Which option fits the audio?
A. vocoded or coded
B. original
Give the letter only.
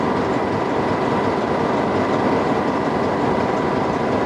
A